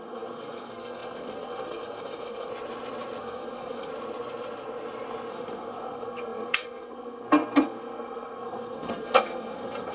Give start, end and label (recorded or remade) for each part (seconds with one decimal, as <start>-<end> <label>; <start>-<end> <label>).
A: 0.0-2.5 remade; 2.5-3.2 recorded; 3.2-3.9 remade; 3.9-5.3 recorded; 5.3-9.9 remade

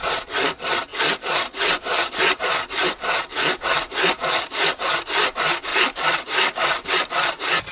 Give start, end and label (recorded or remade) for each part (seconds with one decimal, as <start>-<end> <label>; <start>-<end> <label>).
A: 0.0-0.9 recorded; 0.9-2.1 remade; 2.1-4.2 recorded; 4.2-4.9 remade; 4.9-5.7 recorded; 5.7-6.9 remade; 6.9-7.7 recorded

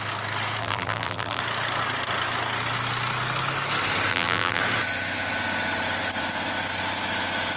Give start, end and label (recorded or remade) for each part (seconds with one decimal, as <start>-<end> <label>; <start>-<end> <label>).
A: 0.0-0.6 recorded; 0.6-1.4 remade; 1.4-4.1 recorded; 4.1-4.6 remade; 4.6-7.6 recorded

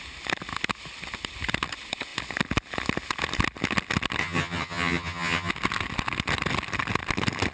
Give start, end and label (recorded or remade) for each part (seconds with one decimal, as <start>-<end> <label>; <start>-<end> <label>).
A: 0.0-4.2 recorded; 4.2-5.5 remade; 5.5-7.5 recorded

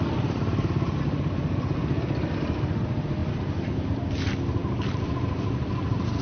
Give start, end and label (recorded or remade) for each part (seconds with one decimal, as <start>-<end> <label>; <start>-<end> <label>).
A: 0.0-6.2 recorded